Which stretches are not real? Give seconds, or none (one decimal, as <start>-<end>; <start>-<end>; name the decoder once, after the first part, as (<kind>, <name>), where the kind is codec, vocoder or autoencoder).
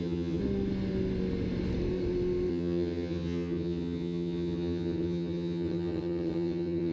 0.0-0.4 (vocoder, HiFi-GAN); 2.5-6.9